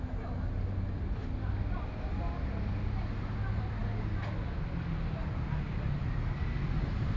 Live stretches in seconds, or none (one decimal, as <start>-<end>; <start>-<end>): 0.0-7.2